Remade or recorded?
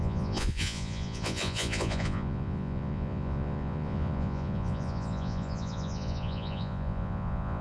remade